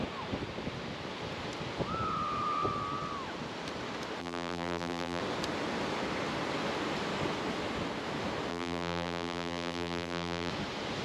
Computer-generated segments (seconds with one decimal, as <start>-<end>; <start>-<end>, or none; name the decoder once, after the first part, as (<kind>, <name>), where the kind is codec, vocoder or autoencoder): 4.2-5.2 (vocoder, BigVGAN v2); 8.5-10.5